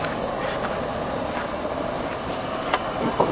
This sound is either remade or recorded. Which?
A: recorded